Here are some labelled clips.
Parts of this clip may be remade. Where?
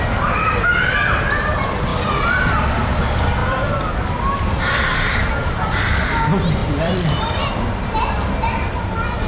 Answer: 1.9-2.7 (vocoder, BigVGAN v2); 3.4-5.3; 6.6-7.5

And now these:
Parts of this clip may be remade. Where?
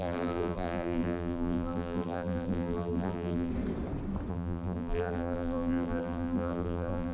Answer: 0.0-3.5 (vocoder, BigVGAN v2); 4.3-7.1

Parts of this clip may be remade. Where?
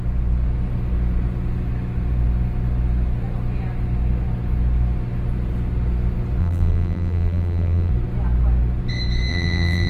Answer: 6.4-7.9 (vocoder, BigVGAN v2); 9.3-9.9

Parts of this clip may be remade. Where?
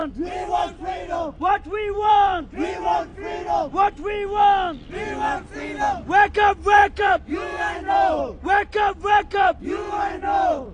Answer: 0.0-3.1 (vocoder, BigVGAN v2); 6.3-10.7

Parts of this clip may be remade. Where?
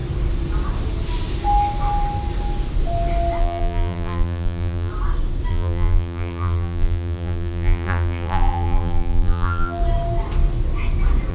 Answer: 3.4-4.9 (vocoder, BigVGAN v2); 5.5-9.8